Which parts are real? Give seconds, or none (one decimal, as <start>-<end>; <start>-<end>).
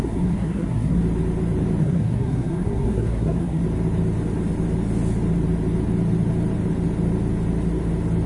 1.0-1.8; 3.6-8.3